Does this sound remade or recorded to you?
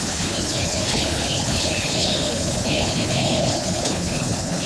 remade